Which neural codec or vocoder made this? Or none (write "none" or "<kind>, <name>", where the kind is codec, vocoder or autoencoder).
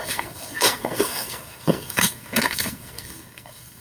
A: codec, SNAC